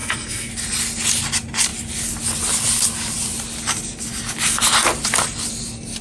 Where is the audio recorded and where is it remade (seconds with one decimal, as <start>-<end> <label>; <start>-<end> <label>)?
0.0-0.5 remade; 0.5-6.0 recorded